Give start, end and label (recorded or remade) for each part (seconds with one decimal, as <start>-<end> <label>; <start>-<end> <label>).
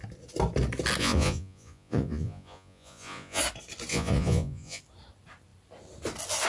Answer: 0.0-1.0 recorded; 1.0-3.4 remade; 3.4-3.9 recorded; 3.9-4.8 remade; 4.8-6.5 recorded